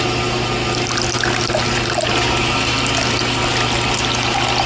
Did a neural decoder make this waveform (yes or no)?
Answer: no